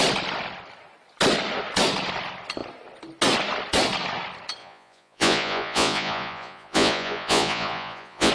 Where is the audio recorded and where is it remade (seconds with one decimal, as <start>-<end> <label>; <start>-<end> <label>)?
0.0-4.6 recorded; 4.6-8.3 remade